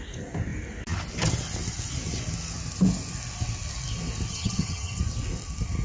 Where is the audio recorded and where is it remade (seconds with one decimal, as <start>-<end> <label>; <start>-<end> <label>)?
0.0-4.3 recorded; 4.3-5.0 remade; 5.0-5.8 recorded